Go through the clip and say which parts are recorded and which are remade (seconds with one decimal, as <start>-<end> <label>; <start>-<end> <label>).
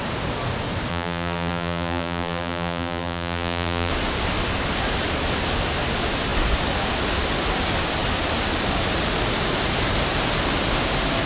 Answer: 0.0-0.9 recorded; 0.9-3.9 remade; 3.9-11.3 recorded